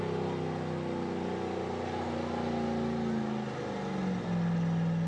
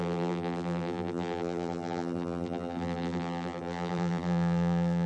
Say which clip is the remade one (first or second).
second